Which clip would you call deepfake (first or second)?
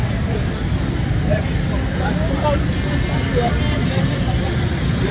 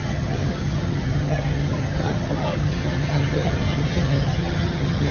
second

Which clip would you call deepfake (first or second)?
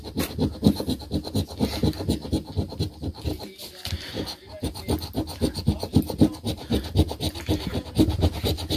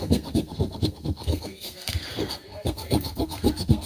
second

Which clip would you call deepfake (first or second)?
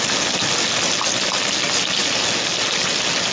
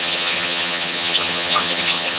second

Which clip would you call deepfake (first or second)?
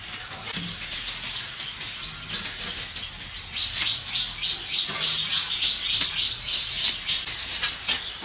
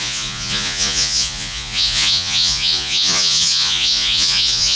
second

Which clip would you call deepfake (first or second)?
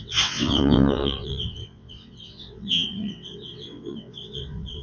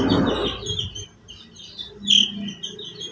first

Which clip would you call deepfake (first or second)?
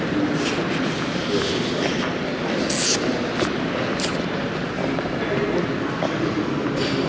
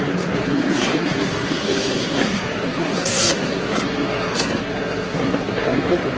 second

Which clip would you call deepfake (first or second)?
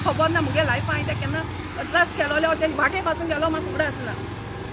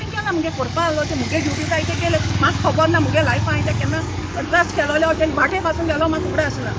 second